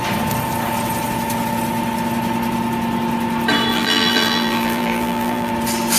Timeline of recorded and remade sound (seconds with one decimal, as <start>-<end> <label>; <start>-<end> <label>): 0.0-3.7 recorded; 3.7-5.5 remade; 5.5-6.0 recorded